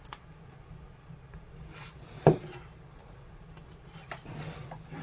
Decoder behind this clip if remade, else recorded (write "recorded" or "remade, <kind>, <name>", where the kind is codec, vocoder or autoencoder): recorded